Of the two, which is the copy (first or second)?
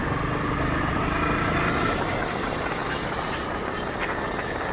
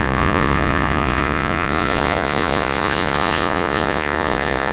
second